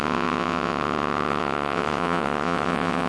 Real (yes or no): no